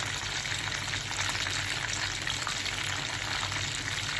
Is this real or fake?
real